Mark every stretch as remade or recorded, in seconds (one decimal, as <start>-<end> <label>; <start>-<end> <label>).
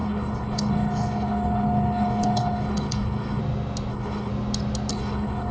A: 0.0-3.4 remade; 3.4-3.9 recorded; 3.9-4.3 remade; 4.3-4.9 recorded; 4.9-5.5 remade